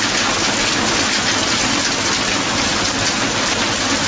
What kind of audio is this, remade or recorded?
recorded